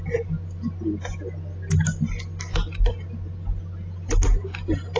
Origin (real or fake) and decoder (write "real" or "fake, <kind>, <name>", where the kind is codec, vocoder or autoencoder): real